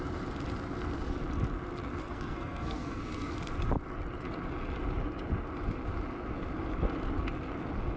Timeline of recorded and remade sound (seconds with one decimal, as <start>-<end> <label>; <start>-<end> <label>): 0.0-2.0 recorded; 2.0-3.3 remade; 3.3-8.0 recorded